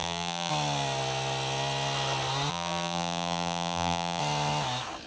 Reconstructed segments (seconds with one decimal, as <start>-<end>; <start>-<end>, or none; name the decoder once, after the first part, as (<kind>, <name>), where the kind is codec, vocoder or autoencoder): 0.0-0.5 (vocoder, BigVGAN v2); 2.5-4.2